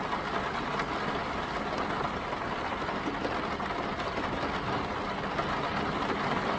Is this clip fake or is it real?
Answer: real